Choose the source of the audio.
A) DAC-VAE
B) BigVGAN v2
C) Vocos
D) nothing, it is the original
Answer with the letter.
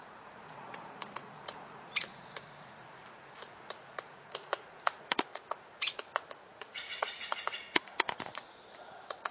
C